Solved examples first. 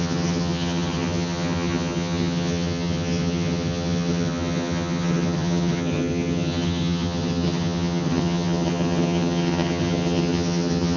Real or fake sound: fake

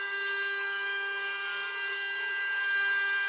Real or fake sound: fake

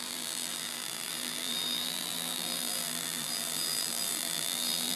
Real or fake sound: fake